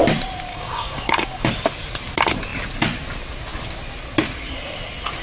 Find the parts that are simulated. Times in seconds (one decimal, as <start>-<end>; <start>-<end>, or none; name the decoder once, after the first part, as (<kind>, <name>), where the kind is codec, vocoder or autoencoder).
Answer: 0.5-1.5 (codec, DAC)